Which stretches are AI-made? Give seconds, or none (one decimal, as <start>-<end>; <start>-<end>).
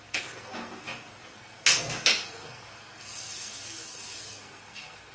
0.0-5.1